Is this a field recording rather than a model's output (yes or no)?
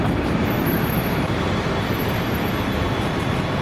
no